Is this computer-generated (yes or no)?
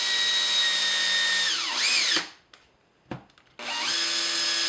no